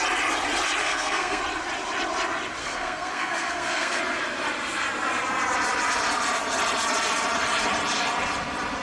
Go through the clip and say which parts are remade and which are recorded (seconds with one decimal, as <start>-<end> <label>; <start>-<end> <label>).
0.0-0.8 recorded; 0.8-1.4 remade; 1.4-2.6 recorded; 2.6-4.0 remade; 4.0-8.8 recorded